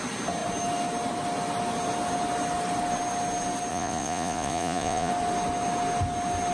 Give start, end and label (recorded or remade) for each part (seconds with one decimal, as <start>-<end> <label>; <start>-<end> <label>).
0.0-3.7 recorded; 3.7-5.1 remade; 5.1-6.5 recorded